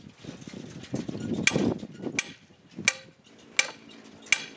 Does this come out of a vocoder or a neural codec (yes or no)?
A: no